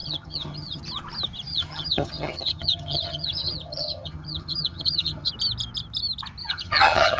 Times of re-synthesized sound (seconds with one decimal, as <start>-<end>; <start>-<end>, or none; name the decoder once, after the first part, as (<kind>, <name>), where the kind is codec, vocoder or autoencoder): 0.0-0.8 (vocoder, HiFi-GAN); 1.5-5.3; 6.4-7.2